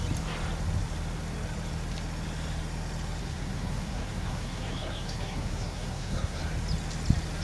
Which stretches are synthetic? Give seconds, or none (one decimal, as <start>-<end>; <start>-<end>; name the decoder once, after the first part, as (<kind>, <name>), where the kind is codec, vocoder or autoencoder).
3.2-6.4 (codec, SNAC)